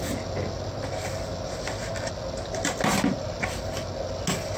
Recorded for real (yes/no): yes